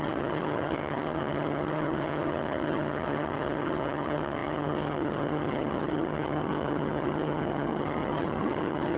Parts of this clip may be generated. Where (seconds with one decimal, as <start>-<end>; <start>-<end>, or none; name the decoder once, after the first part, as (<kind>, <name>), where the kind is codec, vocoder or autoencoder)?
0.0-9.0 (vocoder, HiFi-GAN)